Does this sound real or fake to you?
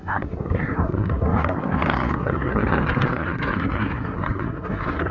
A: fake